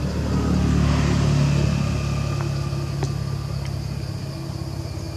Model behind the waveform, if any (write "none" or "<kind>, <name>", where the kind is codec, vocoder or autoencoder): none